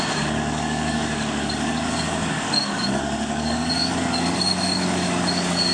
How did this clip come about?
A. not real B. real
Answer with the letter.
A